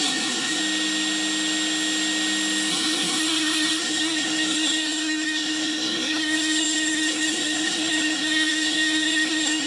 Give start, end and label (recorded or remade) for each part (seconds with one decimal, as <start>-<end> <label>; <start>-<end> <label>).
0.0-0.6 remade; 0.6-2.7 recorded; 2.7-9.7 remade